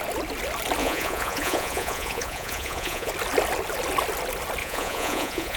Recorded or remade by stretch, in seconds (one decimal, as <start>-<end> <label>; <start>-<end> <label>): 0.0-0.8 recorded; 0.8-3.1 remade; 3.1-4.6 recorded; 4.6-5.6 remade